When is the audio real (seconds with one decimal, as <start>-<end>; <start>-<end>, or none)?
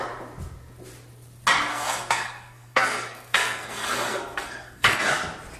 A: 0.0-1.7; 5.0-5.6